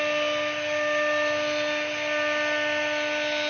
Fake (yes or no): no